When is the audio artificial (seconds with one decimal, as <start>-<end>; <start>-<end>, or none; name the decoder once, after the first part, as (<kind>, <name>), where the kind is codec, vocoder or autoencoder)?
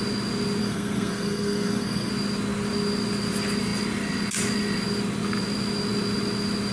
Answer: 0.6-2.1 (codec, SNAC)